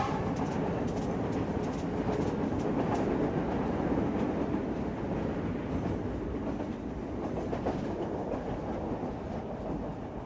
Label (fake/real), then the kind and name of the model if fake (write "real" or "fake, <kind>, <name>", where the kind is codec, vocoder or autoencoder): real